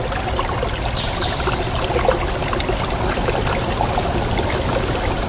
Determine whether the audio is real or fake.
real